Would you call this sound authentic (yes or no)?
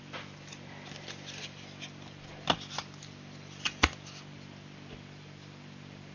yes